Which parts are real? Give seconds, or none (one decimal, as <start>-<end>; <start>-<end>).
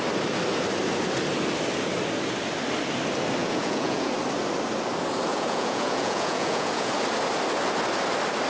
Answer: 0.0-3.4; 4.1-5.3; 6.9-8.5